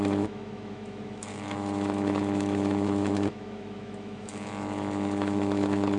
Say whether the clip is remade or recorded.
remade